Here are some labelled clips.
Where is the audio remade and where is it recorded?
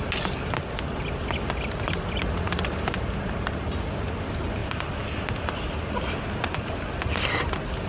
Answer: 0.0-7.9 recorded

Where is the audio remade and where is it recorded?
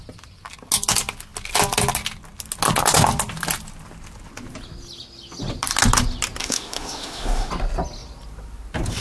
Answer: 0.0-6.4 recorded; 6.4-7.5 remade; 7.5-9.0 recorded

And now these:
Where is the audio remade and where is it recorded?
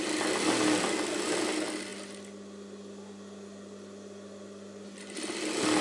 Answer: 0.0-5.8 recorded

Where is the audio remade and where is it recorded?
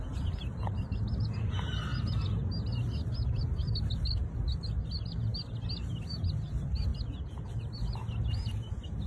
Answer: 0.0-9.1 recorded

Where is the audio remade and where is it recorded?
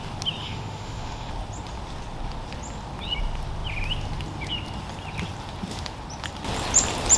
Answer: 0.0-0.4 recorded; 0.4-1.3 remade; 1.3-7.2 recorded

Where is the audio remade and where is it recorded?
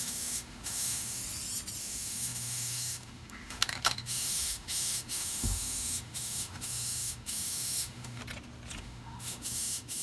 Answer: 0.0-1.2 remade; 1.2-1.8 recorded; 1.8-8.2 remade; 8.2-8.8 recorded; 8.8-10.0 remade